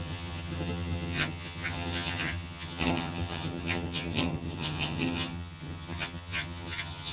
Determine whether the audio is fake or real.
fake